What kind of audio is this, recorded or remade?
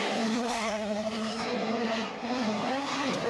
remade